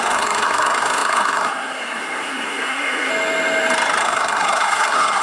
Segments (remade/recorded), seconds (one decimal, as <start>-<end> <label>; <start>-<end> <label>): 0.0-3.1 remade; 3.1-4.0 recorded; 4.0-5.2 remade